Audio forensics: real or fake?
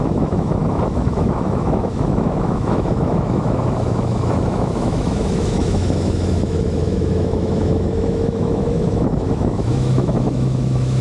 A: fake